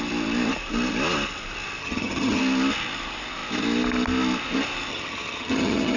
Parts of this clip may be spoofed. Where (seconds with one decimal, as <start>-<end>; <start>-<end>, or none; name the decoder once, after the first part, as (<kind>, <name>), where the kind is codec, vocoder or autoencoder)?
1.8-2.4 (vocoder, HiFi-GAN); 4.9-6.0